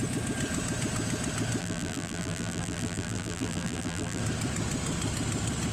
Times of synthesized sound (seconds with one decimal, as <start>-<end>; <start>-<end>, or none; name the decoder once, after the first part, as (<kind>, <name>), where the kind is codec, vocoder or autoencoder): 1.6-4.2 (vocoder, BigVGAN v2)